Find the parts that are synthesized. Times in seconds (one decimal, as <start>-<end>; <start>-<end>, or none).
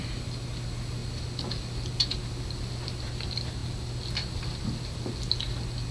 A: none